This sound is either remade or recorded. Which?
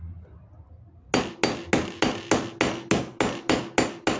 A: recorded